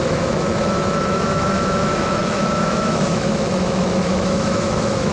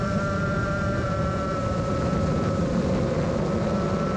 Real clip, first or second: second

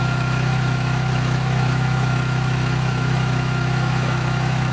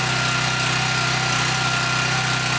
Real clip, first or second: second